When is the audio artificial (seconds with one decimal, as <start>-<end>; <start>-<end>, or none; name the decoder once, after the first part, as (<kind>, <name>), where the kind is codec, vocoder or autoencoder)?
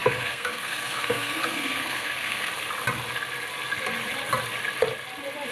0.0-2.5 (codec, SNAC)